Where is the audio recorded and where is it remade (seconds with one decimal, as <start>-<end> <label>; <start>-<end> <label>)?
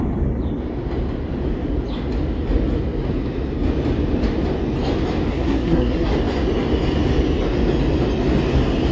0.0-5.3 recorded; 5.3-6.1 remade; 6.1-8.9 recorded